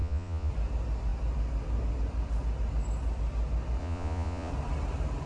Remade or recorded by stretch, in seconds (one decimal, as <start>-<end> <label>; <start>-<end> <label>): 0.0-0.5 remade; 0.5-3.8 recorded; 3.8-4.5 remade; 4.5-5.3 recorded